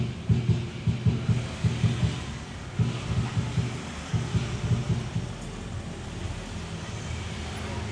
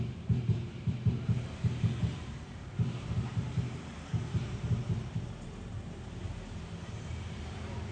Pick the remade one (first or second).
second